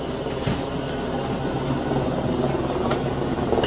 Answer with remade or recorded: recorded